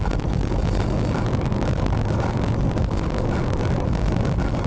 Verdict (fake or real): real